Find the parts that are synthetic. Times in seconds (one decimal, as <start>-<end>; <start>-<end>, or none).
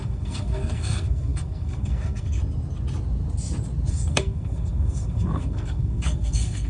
0.0-2.4; 3.9-6.7